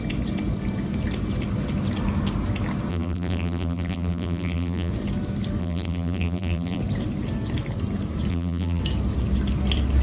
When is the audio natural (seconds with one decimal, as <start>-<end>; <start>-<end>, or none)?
0.0-2.9; 4.9-5.6; 6.8-8.3; 8.8-10.0